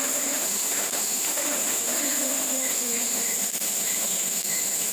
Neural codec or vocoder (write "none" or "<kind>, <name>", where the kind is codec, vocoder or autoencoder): autoencoder, DAC-VAE